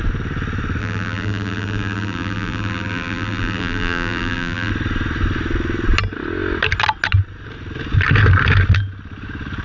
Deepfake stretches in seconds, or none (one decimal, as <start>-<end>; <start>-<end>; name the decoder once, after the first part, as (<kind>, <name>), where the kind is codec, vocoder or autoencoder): 0.8-4.7 (vocoder, BigVGAN v2)